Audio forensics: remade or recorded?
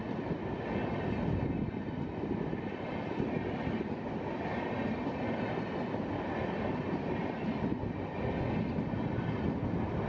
remade